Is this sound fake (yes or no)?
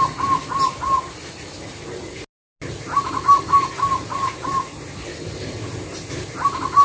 no